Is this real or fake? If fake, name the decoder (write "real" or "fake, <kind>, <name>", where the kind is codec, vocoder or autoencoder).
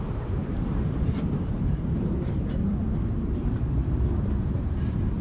fake, vocoder, BigVGAN v2